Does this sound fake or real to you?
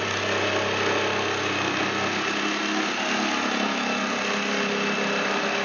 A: real